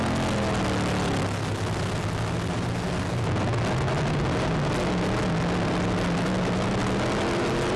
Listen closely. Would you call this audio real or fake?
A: real